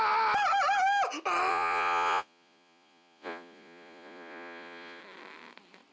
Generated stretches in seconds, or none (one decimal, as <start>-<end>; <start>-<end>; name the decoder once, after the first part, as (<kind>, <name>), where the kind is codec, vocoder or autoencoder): 1.5-5.0 (vocoder, Vocos)